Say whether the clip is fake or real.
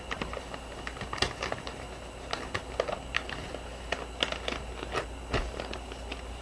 real